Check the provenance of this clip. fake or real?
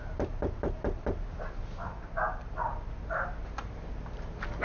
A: real